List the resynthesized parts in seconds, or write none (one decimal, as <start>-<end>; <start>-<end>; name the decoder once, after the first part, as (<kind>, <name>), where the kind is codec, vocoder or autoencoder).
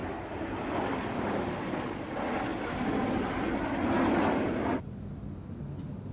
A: none